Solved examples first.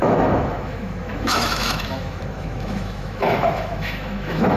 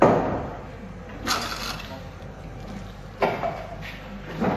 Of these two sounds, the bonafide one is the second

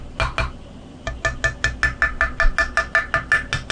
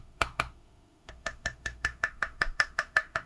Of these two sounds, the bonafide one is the first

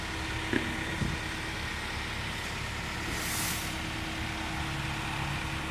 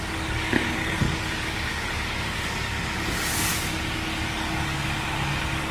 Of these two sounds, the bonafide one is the first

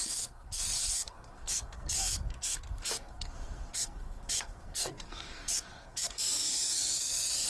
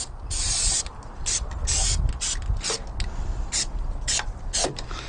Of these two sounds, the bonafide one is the second